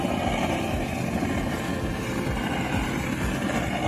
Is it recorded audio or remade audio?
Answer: recorded